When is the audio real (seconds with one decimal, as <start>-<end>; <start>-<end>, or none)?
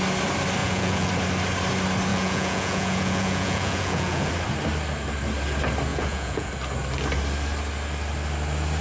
0.0-0.6; 1.1-2.1; 4.3-5.9; 6.5-8.8